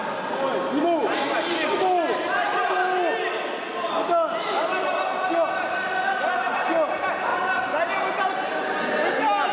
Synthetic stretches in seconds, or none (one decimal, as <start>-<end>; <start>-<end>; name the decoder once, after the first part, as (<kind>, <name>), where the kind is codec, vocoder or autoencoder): none